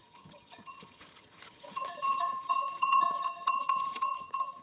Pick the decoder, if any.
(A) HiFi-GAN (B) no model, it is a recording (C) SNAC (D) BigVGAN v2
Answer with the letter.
A